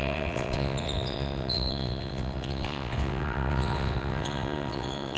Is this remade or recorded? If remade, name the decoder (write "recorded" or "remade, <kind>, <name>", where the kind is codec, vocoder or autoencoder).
remade, vocoder, WaveNeXt